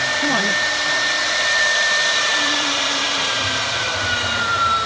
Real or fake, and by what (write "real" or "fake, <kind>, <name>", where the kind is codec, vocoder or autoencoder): fake, vocoder, BigVGAN v2